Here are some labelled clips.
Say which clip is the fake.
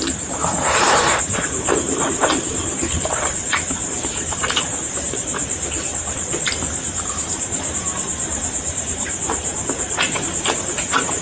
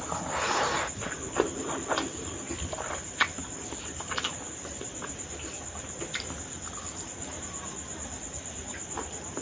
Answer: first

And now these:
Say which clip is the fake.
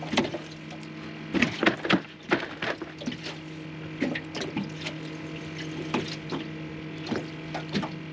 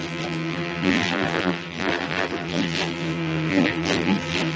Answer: second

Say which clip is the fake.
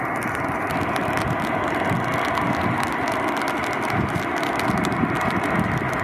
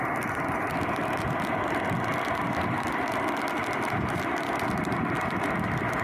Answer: second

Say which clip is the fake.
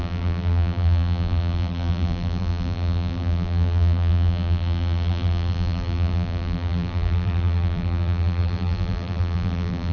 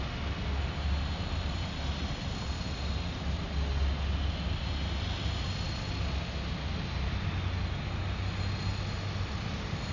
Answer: first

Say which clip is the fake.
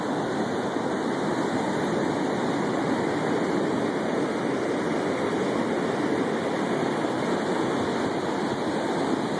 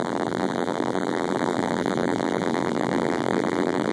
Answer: second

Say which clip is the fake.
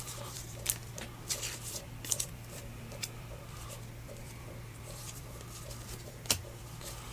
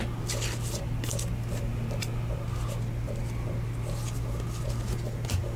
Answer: first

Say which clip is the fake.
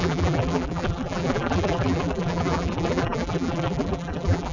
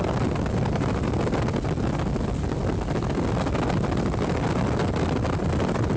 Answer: first